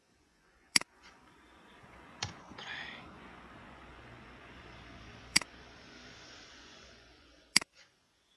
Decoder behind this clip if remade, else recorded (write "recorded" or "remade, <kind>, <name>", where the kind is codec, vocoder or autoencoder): remade, vocoder, Vocos